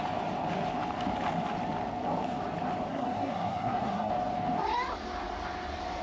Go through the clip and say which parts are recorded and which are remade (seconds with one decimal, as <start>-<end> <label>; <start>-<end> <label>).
0.0-2.9 recorded; 2.9-4.1 remade; 4.1-6.0 recorded